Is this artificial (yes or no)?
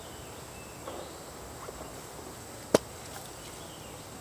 no